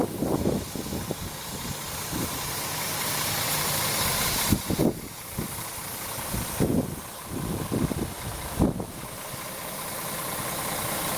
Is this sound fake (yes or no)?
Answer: no